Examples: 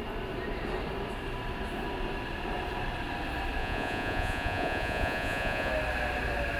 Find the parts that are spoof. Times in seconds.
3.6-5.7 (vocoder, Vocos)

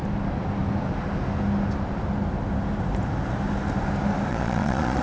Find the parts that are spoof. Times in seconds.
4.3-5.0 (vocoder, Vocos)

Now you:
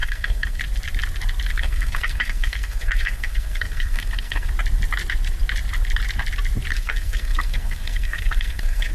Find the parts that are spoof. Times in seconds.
0.0-0.6 (codec, SNAC); 1.5-4.5; 6.7-8.9

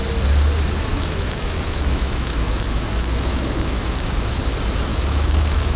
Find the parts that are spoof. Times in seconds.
0.9-4.4 (autoencoder, DAC-VAE); 4.9-5.8

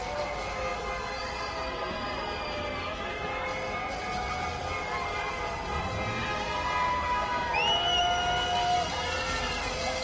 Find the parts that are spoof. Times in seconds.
none

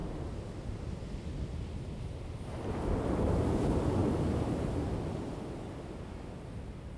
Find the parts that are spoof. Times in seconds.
0.0-0.9 (vocoder, BigVGAN v2); 4.0-4.8

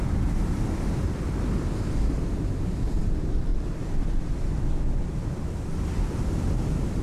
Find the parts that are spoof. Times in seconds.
none